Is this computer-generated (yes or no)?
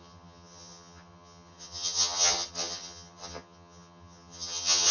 yes